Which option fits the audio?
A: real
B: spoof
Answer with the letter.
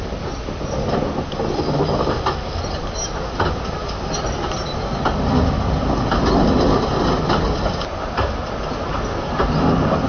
A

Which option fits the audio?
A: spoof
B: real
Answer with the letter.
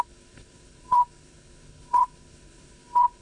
A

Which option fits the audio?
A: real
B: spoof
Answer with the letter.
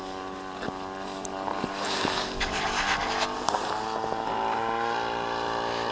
A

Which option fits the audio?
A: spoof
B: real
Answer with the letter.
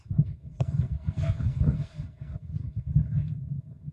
A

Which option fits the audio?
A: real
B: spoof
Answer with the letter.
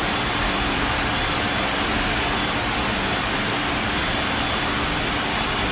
A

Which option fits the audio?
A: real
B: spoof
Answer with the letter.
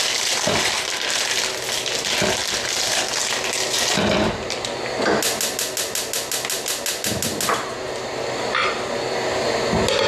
A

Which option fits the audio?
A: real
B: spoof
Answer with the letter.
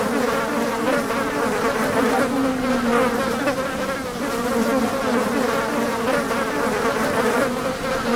A